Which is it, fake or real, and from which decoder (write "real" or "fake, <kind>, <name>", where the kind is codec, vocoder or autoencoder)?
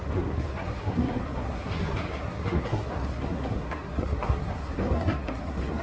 fake, codec, SNAC